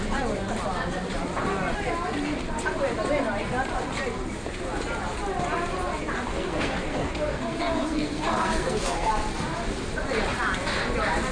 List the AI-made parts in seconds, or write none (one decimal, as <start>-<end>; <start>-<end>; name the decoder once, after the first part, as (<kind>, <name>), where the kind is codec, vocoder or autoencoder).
6.3-9.1 (codec, SNAC)